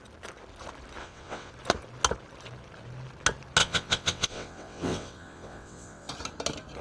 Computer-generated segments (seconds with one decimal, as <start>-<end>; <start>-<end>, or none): 1.0-1.5; 3.6-6.1